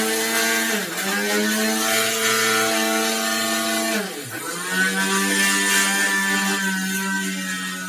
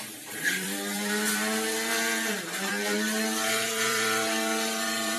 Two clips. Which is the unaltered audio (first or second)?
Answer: first